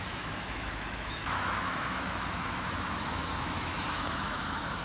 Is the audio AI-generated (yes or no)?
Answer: yes